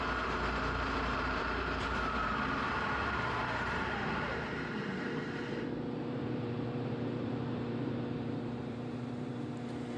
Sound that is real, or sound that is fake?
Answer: fake